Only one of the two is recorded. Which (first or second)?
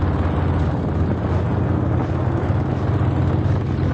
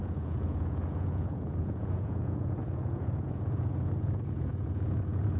first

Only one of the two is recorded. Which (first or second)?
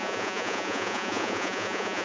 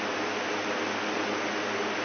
second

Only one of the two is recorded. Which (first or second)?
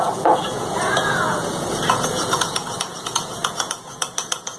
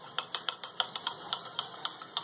second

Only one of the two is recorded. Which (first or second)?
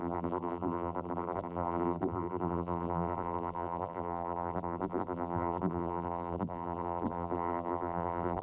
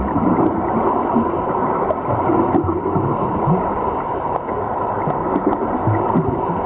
second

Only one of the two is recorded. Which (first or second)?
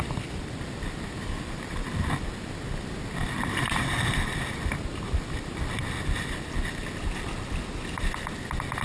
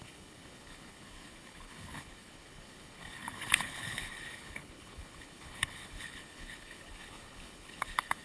first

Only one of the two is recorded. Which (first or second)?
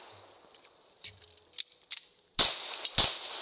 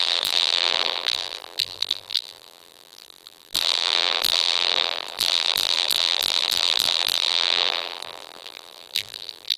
first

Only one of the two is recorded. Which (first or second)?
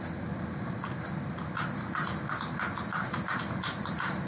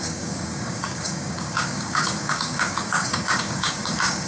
first